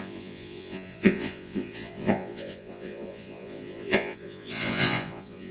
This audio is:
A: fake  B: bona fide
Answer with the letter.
A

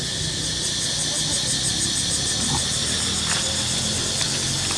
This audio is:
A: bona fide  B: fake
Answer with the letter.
A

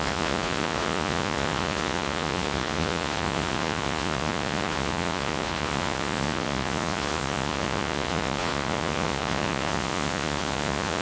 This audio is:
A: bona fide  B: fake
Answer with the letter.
B